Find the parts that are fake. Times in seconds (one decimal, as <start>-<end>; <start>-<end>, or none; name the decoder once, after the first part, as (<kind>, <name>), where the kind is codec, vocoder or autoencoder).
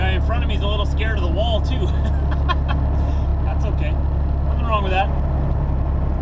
none